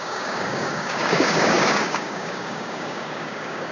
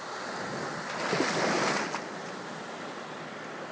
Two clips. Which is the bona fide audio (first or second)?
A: second